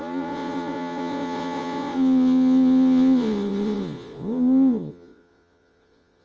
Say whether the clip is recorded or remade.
remade